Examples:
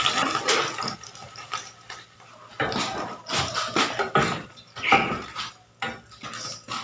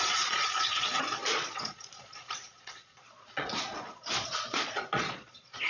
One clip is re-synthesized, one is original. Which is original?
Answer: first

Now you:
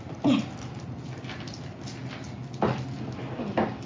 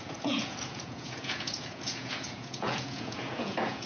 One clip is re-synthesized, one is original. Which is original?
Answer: first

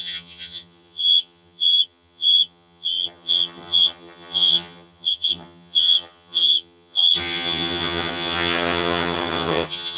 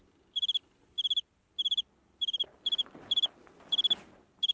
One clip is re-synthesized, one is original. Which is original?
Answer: second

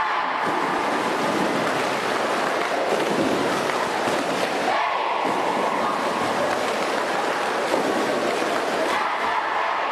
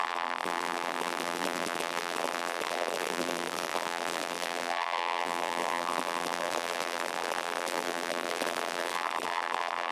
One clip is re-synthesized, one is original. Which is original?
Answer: first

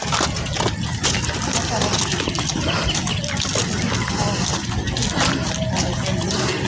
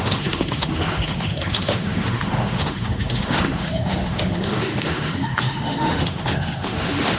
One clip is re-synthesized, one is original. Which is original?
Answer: first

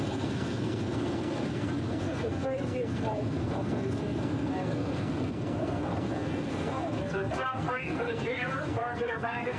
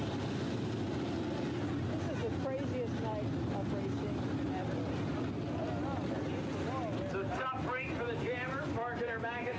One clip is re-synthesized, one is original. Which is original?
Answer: second